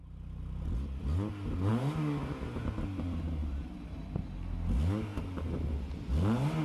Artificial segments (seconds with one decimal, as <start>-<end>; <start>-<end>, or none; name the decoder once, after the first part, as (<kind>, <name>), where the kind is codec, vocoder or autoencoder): none